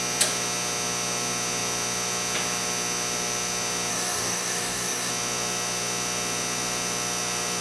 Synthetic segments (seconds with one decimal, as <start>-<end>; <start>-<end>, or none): 3.9-5.1